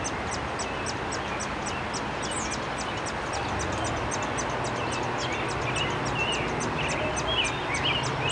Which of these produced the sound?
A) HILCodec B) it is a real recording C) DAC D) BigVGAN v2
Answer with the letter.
B